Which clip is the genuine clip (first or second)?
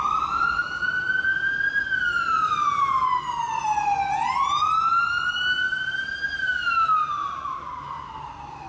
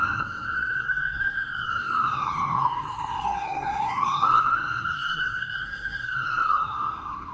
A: first